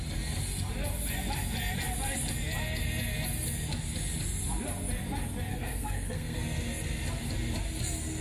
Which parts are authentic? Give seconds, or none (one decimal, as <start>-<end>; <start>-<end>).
0.0-5.5; 6.4-8.2

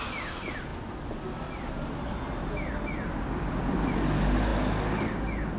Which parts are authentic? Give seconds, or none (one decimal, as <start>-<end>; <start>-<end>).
0.0-5.6

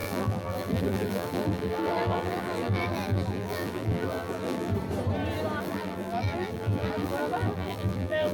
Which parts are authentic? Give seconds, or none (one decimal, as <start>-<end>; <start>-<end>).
4.7-5.6

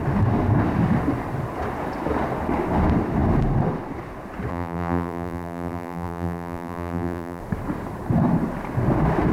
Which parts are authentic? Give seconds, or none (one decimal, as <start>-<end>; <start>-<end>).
0.0-4.5; 7.4-9.3

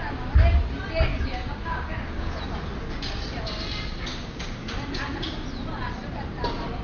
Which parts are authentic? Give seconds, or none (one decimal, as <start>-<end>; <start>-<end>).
0.0-1.1; 2.4-4.1; 4.7-6.8

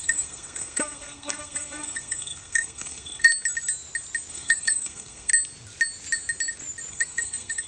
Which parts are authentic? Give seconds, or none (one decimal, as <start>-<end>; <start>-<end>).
3.3-4.3; 5.3-6.9